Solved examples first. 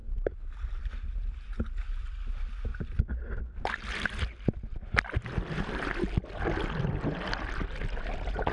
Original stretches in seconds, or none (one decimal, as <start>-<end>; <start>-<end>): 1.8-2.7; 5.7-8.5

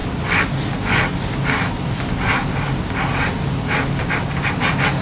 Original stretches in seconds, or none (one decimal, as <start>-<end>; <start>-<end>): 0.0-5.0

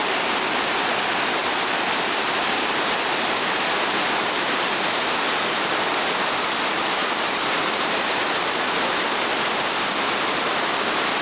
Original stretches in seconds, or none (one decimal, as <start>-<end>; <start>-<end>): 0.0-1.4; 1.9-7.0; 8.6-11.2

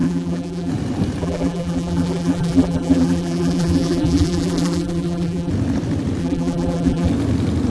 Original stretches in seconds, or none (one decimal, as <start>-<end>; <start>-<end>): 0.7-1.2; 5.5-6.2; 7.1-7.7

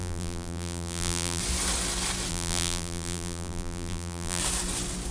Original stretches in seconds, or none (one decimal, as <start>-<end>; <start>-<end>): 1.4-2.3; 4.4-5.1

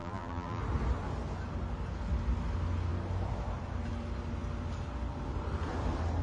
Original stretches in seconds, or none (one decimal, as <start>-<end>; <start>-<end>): 0.6-6.2

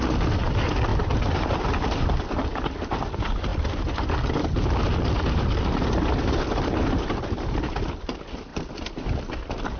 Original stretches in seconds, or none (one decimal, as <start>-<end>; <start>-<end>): 0.0-0.9; 2.4-8.5; 9.2-9.8